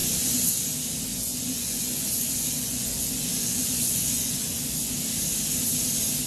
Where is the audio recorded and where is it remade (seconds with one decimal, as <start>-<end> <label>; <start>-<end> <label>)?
0.0-0.5 remade; 0.5-1.1 recorded; 1.1-4.9 remade; 4.9-6.3 recorded